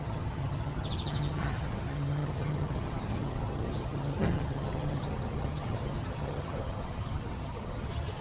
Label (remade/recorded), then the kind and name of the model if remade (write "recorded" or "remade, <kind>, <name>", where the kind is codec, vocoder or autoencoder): remade, vocoder, HiFi-GAN